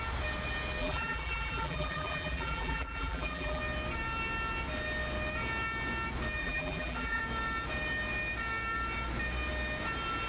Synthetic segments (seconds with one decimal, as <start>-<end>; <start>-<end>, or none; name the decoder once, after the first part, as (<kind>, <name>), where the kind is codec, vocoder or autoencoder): 0.8-3.6 (vocoder, BigVGAN v2); 6.4-7.2